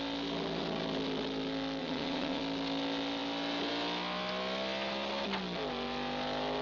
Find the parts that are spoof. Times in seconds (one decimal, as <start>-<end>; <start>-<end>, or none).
1.8-2.4